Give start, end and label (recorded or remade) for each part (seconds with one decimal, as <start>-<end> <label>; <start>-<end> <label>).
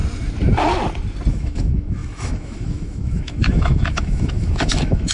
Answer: 0.0-1.3 recorded; 1.3-5.1 remade